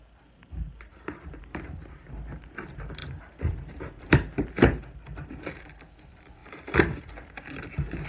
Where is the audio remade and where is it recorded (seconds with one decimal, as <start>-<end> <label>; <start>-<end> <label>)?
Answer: 0.0-0.9 recorded; 0.9-1.8 remade; 1.8-3.0 recorded; 3.0-4.8 remade; 4.8-6.4 recorded; 6.4-7.0 remade; 7.0-8.1 recorded